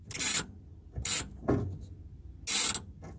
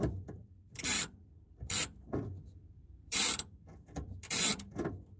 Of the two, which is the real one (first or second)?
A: first